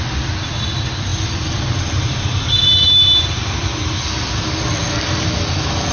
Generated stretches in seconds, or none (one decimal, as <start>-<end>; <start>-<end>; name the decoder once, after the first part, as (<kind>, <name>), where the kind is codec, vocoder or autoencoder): none